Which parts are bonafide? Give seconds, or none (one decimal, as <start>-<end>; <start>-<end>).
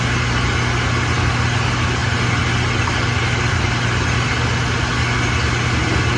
0.0-6.2